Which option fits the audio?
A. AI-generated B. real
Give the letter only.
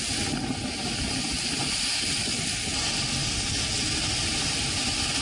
B